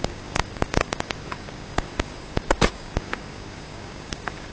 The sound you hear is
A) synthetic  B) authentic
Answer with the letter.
A